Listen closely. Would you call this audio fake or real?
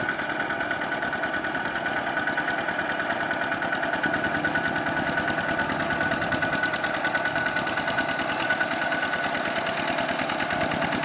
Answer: real